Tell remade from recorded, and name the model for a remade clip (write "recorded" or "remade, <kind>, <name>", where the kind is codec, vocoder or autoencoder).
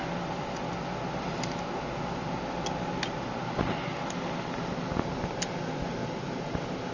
recorded